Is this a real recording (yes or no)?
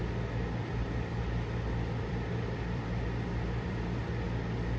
no